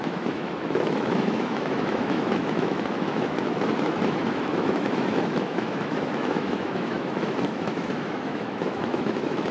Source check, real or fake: fake